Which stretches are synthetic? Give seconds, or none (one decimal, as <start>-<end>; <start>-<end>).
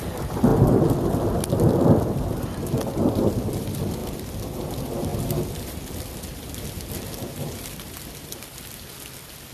0.0-0.5; 1.5-4.0; 4.6-5.1; 5.9-9.5